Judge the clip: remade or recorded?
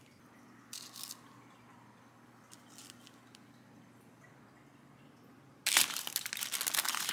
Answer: recorded